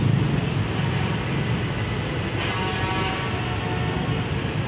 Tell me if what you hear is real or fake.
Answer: real